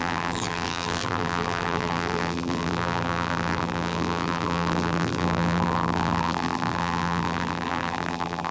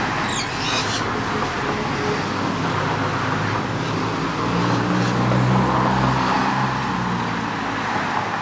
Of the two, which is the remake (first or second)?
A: first